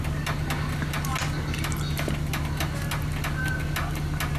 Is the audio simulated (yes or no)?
no